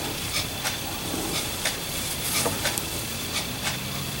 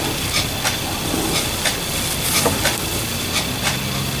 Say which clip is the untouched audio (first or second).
second